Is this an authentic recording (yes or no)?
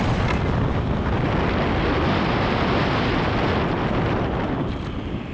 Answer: yes